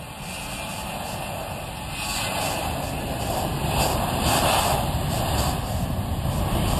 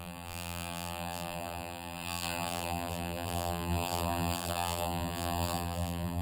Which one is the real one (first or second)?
first